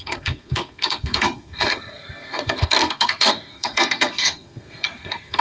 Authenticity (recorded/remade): remade